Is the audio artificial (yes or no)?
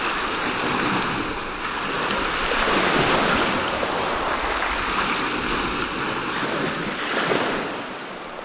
yes